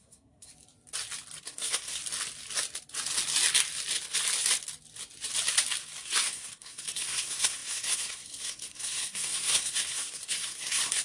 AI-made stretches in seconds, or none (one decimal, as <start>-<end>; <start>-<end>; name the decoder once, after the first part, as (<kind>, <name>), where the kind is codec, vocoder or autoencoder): 0.0-0.5 (codec, SNAC); 1.4-2.0; 6.0-11.0